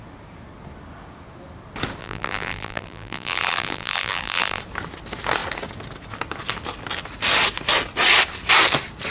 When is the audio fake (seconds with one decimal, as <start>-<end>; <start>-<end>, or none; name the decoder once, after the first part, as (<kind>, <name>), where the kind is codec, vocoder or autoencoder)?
2.0-4.6 (vocoder, BigVGAN v2)